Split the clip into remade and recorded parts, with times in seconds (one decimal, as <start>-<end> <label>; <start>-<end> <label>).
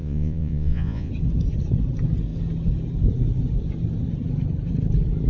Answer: 0.0-1.1 remade; 1.1-5.3 recorded